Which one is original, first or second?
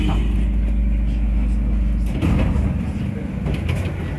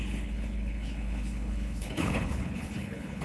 first